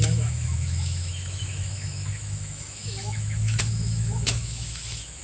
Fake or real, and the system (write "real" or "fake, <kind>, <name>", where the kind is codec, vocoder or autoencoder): fake, autoencoder, DAC-VAE